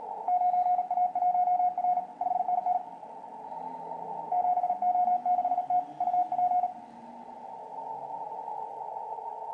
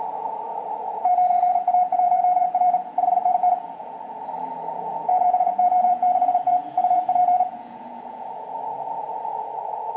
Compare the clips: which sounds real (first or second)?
first